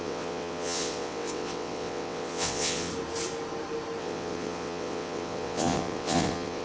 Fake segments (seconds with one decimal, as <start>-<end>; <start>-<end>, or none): 0.0-2.9; 4.0-6.6